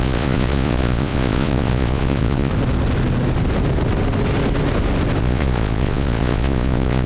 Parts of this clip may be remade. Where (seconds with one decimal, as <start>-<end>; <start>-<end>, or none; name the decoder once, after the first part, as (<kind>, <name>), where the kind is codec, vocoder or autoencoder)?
0.0-2.5 (vocoder, Vocos); 5.2-7.1

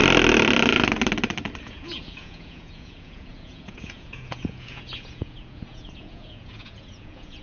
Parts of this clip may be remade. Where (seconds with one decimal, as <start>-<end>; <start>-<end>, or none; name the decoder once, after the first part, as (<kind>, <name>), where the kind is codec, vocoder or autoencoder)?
1.6-7.4 (vocoder, Vocos)

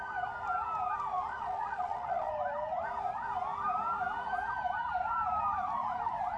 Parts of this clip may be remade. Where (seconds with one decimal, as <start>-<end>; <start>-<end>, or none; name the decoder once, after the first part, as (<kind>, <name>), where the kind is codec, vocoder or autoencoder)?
1.3-2.3 (vocoder, Vocos)

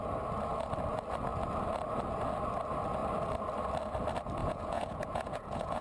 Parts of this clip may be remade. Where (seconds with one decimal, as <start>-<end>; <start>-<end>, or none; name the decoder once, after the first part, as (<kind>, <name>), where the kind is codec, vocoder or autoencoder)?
4.4-5.8 (vocoder, Vocos)

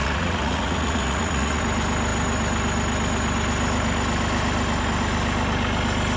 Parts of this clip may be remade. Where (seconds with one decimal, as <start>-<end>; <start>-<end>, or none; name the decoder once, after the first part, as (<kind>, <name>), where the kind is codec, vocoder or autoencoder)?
0.0-1.6 (vocoder, Vocos)

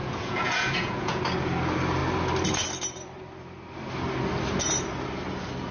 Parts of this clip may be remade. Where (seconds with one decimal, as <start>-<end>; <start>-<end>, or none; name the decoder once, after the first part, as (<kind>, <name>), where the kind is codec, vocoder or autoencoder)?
0.0-1.2 (vocoder, Vocos)